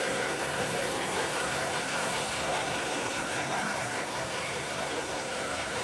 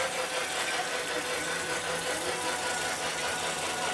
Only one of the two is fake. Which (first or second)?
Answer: first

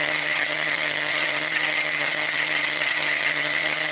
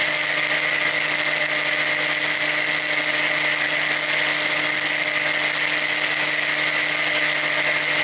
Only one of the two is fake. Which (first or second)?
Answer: first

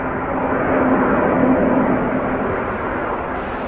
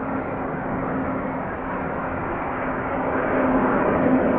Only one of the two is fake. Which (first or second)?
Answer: second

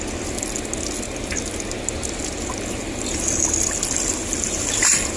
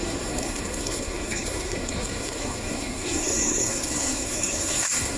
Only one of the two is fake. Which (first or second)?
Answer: second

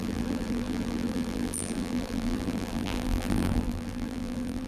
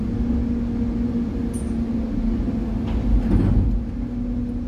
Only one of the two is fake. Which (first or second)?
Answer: first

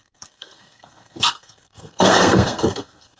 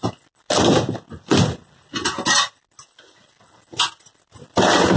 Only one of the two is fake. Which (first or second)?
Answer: first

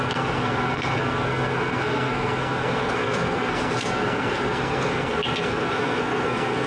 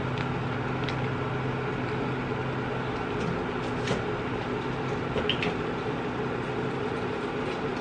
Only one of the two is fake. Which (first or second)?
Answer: first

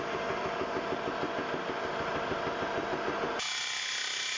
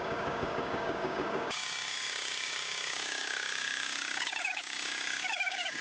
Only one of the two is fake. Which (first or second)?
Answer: second